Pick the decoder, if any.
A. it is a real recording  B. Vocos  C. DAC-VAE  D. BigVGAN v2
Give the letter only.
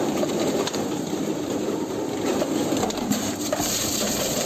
D